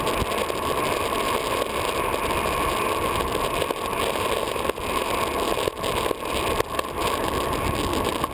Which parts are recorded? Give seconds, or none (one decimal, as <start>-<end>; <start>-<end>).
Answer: 0.0-8.3